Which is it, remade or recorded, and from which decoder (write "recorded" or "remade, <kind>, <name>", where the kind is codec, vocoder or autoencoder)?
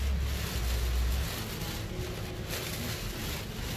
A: recorded